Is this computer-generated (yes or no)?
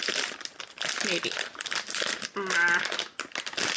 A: no